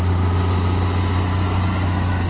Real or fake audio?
real